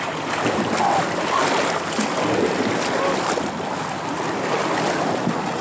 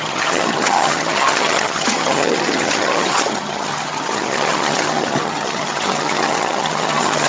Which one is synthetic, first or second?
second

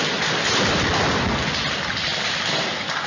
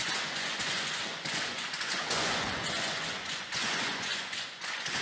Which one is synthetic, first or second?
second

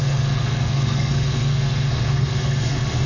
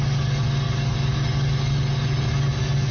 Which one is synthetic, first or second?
first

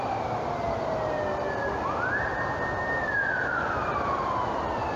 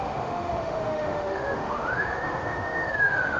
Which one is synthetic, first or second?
second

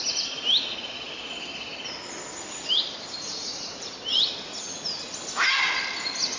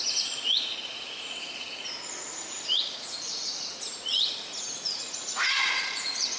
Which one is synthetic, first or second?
second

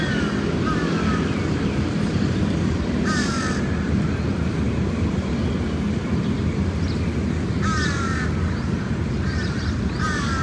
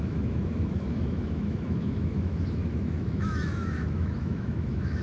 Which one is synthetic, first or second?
second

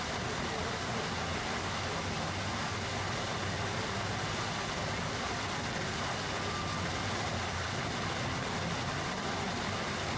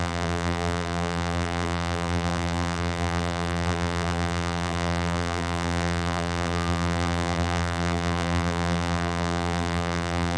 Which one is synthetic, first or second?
second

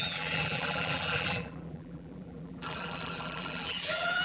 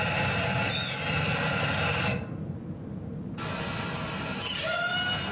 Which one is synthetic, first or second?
first